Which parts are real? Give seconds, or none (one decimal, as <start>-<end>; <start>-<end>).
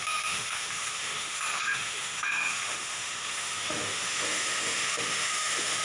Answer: none